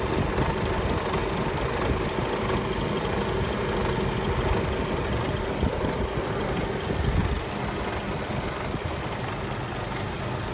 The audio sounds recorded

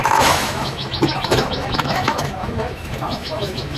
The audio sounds remade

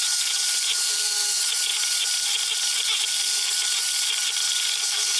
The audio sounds recorded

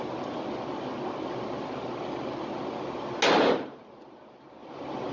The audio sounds recorded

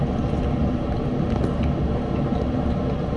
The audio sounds recorded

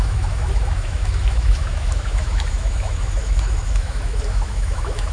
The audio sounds remade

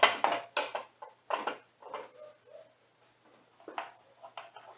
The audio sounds recorded